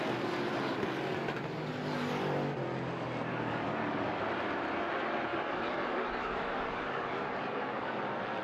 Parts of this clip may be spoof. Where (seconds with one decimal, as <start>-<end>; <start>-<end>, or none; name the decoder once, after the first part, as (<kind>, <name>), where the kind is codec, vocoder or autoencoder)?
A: 3.3-4.2 (codec, DAC); 5.3-8.0